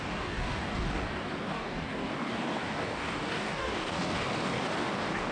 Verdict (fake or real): fake